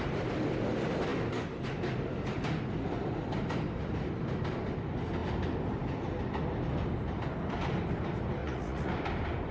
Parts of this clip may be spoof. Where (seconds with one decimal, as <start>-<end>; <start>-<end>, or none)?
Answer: 8.4-8.9